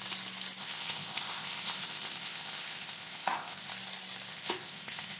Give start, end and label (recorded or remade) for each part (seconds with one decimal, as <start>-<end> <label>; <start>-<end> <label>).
0.0-0.6 recorded; 0.6-3.7 remade; 3.7-4.3 recorded; 4.3-5.2 remade